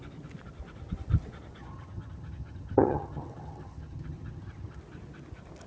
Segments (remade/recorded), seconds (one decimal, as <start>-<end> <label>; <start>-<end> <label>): 0.0-1.6 recorded; 1.6-4.8 remade; 4.8-5.7 recorded